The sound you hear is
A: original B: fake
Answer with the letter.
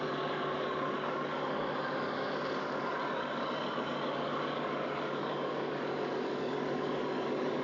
B